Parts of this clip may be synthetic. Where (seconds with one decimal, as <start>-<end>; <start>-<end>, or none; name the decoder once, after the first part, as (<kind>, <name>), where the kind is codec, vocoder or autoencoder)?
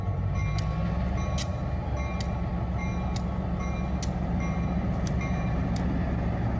none